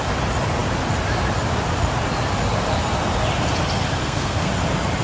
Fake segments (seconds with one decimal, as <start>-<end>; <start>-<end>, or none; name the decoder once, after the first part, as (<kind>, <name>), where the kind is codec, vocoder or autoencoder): 4.0-4.5 (codec, SNAC)